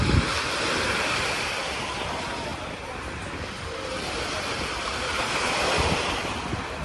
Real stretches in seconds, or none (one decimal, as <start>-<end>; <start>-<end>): 0.0-6.8